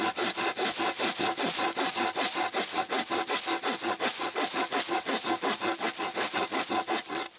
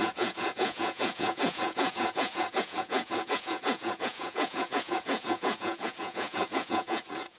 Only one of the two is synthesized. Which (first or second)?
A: second